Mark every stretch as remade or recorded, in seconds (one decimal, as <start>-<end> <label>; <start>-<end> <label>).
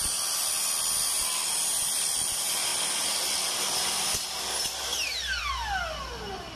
0.0-6.6 recorded